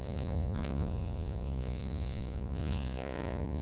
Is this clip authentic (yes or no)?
no